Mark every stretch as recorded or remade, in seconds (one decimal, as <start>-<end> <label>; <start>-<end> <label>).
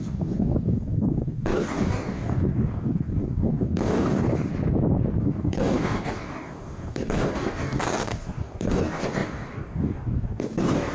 0.0-4.5 remade; 4.5-5.2 recorded; 5.2-10.9 remade